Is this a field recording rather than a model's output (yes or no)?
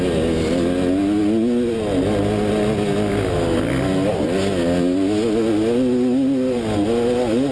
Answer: yes